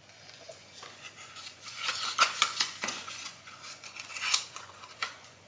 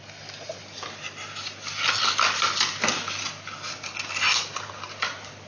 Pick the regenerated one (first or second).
first